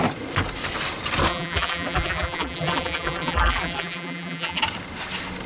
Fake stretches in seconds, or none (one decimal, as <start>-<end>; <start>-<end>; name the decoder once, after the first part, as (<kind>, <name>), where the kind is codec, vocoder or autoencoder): 1.3-4.6 (vocoder, BigVGAN v2)